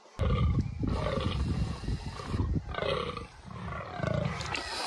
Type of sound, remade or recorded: recorded